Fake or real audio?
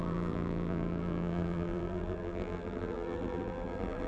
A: fake